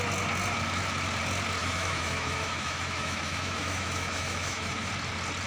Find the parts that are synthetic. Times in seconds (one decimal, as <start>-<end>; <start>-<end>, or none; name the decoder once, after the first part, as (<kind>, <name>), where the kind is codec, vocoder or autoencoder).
1.6-4.9 (autoencoder, DAC-VAE)